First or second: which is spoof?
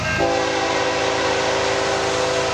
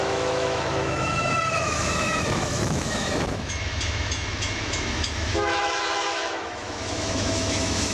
second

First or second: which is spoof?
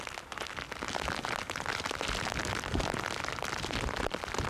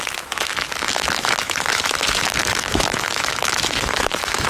second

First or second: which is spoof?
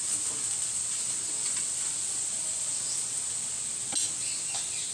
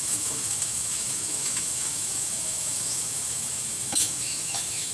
second